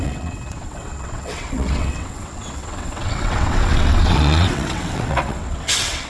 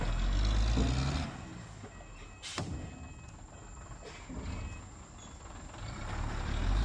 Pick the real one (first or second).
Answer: second